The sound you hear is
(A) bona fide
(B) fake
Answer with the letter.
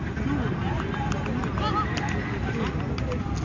A